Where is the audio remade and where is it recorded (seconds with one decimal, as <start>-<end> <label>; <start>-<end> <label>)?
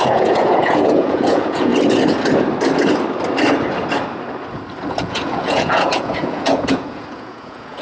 0.0-1.7 remade; 1.7-4.9 recorded; 4.9-7.8 remade